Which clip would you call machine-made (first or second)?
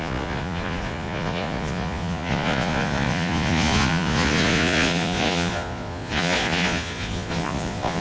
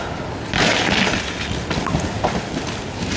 first